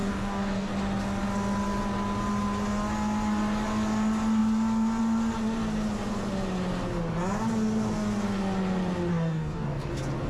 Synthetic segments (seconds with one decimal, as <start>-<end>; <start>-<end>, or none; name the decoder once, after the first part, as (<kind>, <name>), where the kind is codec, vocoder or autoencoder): 0.0-0.7 (codec, DAC); 9.1-9.9